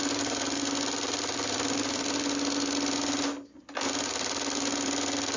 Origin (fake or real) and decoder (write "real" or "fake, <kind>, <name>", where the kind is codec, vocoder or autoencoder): real